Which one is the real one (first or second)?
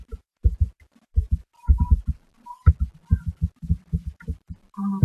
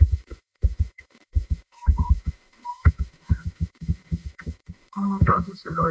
first